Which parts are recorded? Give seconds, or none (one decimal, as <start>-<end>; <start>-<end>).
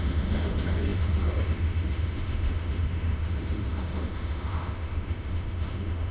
none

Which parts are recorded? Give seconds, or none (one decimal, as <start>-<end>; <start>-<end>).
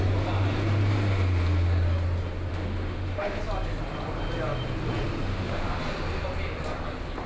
0.0-2.5; 3.4-5.3; 5.8-7.3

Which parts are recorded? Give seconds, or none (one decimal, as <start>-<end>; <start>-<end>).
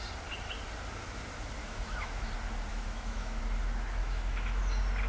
0.0-1.6; 2.3-2.7; 3.4-4.0; 4.6-5.1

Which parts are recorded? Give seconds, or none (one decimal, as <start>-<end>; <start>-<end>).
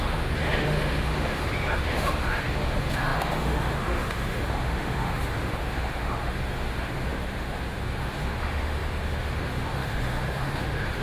none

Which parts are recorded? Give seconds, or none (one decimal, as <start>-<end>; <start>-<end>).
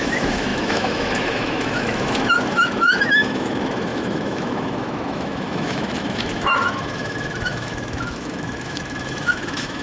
none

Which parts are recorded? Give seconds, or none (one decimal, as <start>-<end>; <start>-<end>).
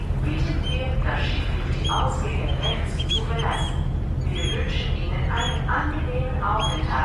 0.0-2.3; 3.3-7.0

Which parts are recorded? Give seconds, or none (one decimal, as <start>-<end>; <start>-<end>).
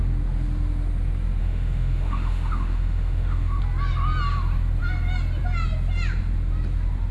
0.0-1.4; 3.6-7.1